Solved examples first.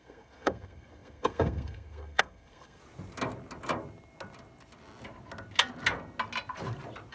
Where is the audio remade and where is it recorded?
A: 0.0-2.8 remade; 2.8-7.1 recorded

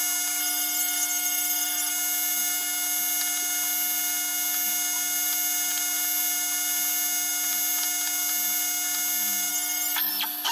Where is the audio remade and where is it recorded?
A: 0.0-0.4 recorded; 0.4-1.9 remade; 1.9-9.5 recorded; 9.5-10.1 remade; 10.1-10.5 recorded

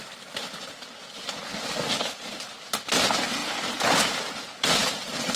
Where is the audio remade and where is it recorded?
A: 0.0-5.4 recorded

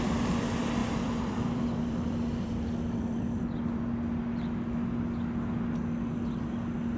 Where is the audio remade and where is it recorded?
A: 0.0-0.8 recorded; 0.8-3.4 remade; 3.4-7.0 recorded